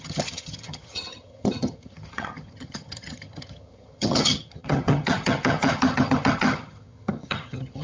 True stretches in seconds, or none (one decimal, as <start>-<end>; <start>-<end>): none